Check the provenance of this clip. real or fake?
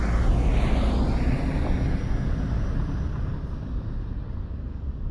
real